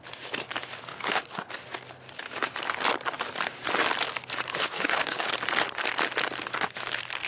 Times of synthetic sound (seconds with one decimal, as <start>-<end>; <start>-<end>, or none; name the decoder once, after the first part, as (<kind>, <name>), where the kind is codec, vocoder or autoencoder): 0.9-1.5 (codec, HILCodec); 4.6-5.3